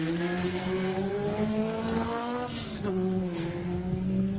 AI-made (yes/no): yes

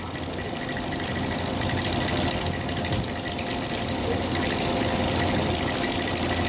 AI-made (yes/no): no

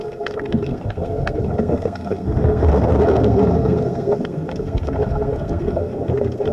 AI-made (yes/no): yes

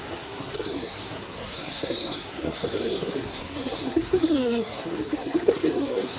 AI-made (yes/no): yes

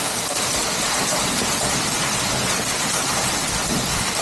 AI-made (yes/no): no